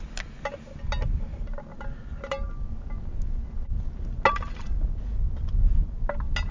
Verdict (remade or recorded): recorded